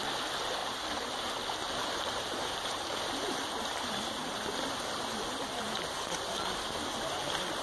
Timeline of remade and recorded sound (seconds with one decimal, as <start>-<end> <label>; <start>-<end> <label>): 0.0-0.6 recorded; 0.6-1.2 remade; 1.2-1.6 recorded; 1.6-2.8 remade; 2.8-7.6 recorded